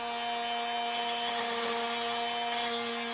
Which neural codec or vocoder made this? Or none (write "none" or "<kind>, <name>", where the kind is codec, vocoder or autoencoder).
none